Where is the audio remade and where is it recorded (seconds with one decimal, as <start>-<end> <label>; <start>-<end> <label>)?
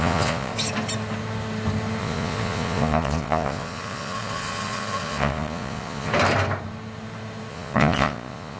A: 0.0-0.5 remade; 0.5-2.0 recorded; 2.0-6.1 remade; 6.1-7.5 recorded; 7.5-8.6 remade